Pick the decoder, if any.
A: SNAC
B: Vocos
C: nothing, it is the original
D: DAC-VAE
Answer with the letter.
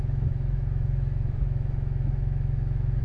D